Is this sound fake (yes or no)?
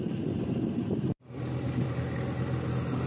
no